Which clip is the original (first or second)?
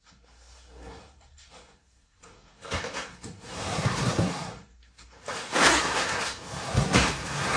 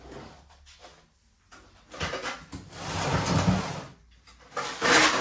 second